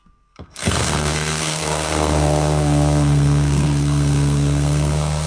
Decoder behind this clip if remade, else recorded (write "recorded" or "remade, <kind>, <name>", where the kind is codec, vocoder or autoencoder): remade, codec, SNAC